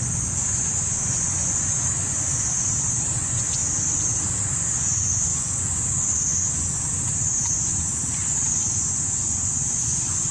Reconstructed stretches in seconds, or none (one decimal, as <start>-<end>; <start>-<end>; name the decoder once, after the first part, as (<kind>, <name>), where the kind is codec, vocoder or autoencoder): 0.0-3.6 (vocoder, Vocos); 4.5-10.3